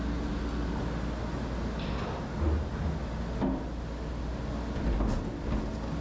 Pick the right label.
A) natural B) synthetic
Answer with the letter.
A